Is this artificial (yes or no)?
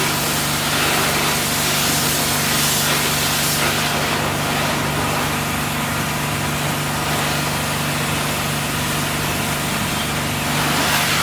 no